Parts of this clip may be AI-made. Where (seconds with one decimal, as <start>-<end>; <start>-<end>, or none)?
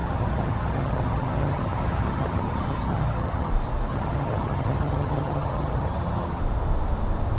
0.0-3.5; 3.9-6.4